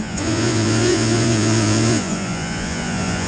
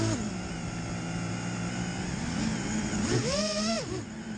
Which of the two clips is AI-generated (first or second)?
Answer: first